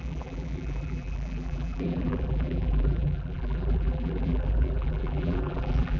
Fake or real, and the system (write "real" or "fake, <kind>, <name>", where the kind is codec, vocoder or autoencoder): fake, vocoder, BigVGAN v2